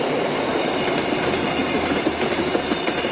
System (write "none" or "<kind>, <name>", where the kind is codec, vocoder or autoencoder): none